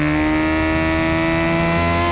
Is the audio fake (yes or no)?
no